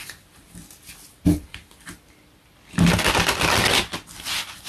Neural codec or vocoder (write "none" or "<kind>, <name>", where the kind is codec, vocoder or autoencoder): none